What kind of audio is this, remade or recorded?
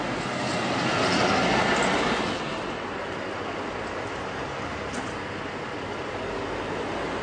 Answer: recorded